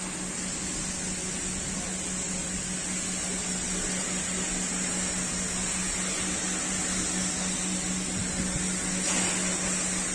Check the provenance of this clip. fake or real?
real